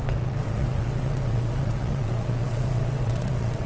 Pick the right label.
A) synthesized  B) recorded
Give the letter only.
A